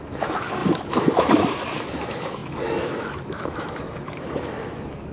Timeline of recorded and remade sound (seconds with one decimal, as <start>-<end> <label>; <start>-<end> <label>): 0.0-5.1 remade